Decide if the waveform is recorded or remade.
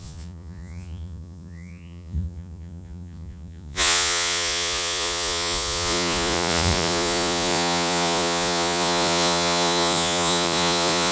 remade